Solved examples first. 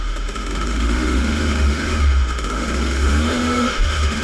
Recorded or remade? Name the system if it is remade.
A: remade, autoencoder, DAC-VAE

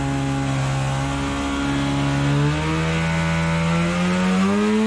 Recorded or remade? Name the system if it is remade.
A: recorded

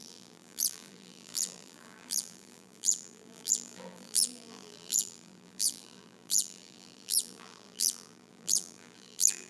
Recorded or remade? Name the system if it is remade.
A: remade, vocoder, BigVGAN v2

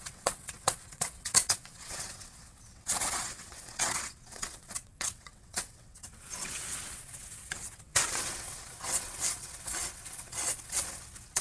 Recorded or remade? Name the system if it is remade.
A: remade, vocoder, WaveNeXt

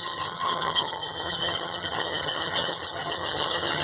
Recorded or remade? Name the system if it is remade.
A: remade, vocoder, HiFi-GAN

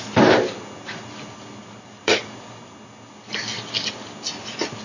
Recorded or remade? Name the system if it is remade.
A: recorded